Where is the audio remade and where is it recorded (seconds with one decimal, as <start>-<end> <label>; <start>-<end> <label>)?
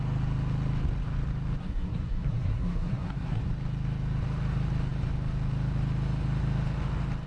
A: 0.0-1.6 recorded; 1.6-3.4 remade; 3.4-7.3 recorded